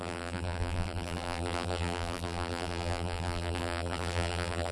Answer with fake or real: fake